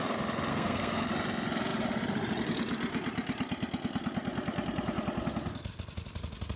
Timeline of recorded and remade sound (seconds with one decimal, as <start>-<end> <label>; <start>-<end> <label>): 0.0-0.5 recorded; 0.5-1.1 remade; 1.1-6.6 recorded